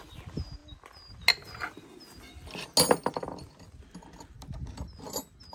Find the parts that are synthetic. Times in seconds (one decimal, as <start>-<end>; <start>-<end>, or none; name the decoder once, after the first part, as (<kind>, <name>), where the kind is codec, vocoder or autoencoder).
none